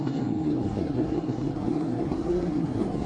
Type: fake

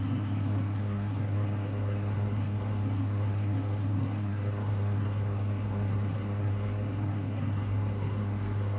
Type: fake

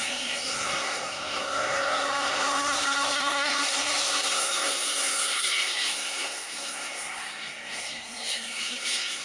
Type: fake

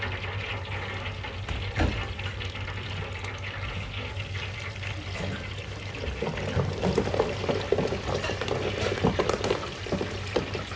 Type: real